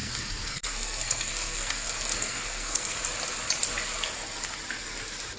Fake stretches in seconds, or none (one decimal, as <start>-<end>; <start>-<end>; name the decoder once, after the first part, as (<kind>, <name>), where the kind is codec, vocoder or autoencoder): 0.0-3.0 (codec, SNAC)